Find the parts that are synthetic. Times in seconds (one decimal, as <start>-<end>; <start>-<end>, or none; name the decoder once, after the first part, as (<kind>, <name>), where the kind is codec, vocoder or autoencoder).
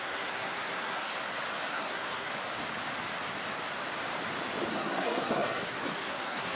0.0-1.1 (codec, SNAC); 1.7-2.3; 4.7-6.6